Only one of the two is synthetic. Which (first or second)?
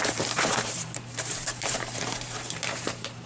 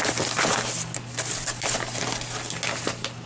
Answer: first